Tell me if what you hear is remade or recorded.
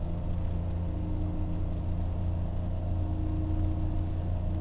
recorded